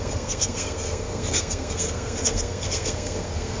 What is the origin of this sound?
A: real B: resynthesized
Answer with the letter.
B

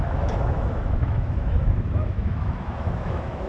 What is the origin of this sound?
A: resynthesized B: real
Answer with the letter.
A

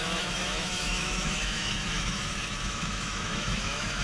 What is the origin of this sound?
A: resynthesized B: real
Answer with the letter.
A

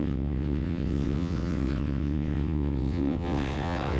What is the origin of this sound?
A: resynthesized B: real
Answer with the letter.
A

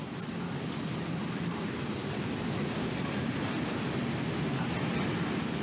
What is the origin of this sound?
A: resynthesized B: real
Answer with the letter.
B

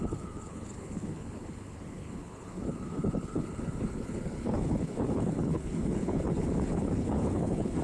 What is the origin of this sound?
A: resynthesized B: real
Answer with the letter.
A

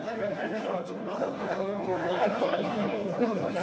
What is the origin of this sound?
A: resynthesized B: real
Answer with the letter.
A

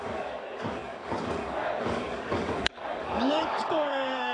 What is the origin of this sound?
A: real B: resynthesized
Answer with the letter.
B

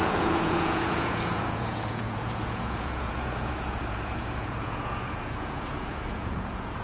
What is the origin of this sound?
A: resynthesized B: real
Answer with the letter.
A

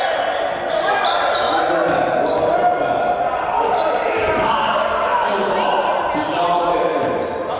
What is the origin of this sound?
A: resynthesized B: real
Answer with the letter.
B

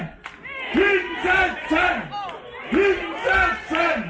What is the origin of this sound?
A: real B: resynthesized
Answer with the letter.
A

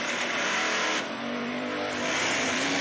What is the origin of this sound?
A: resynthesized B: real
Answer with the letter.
A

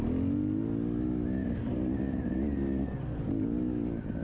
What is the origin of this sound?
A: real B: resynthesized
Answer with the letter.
A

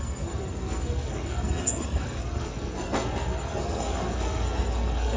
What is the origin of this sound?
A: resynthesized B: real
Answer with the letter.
A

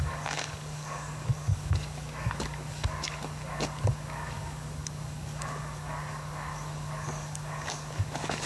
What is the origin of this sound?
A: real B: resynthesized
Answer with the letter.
B